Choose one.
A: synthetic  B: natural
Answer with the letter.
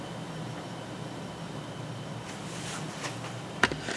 B